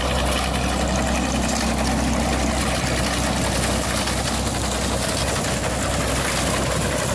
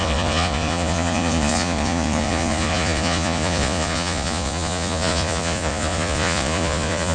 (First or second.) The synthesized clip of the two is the second